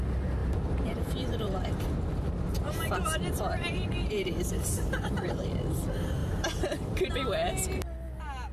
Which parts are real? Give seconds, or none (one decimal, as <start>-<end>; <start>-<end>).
0.0-0.4; 5.5-6.2; 7.1-8.5

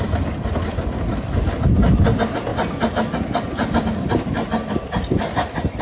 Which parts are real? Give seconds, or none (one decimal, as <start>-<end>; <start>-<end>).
0.0-5.8

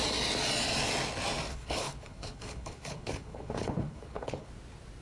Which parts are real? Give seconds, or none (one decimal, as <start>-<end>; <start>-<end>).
0.0-1.5; 4.5-5.0